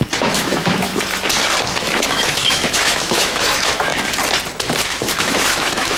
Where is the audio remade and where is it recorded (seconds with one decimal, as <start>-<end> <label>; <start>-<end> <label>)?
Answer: 0.0-0.9 remade; 0.9-1.8 recorded; 1.8-3.9 remade; 3.9-4.8 recorded; 4.8-6.0 remade